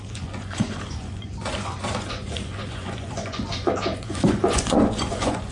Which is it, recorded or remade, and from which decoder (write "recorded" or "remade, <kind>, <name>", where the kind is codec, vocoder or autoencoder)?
remade, vocoder, Vocos